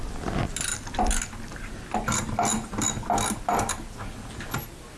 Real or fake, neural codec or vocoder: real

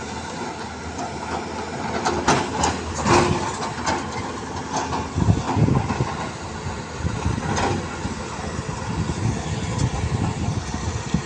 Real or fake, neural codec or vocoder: real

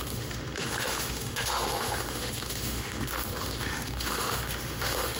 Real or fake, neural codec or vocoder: fake, autoencoder, DAC-VAE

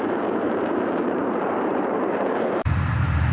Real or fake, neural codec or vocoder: fake, vocoder, BigVGAN v2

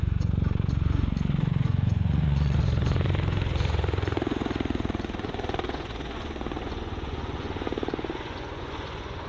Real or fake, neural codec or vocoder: fake, vocoder, Vocos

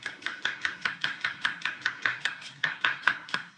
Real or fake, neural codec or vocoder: fake, codec, SNAC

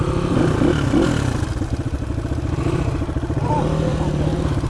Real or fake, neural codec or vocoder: real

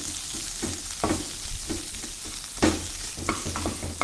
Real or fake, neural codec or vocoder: real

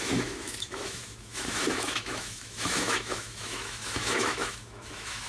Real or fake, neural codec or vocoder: fake, autoencoder, DAC-VAE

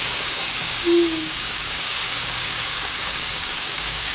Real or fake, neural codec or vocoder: fake, codec, DAC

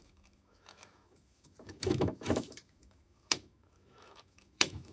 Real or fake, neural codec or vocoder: fake, autoencoder, DAC-VAE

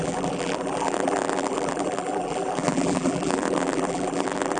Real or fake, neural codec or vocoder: fake, vocoder, BigVGAN v2